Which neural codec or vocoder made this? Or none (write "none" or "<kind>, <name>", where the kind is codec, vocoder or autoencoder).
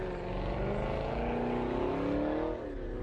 none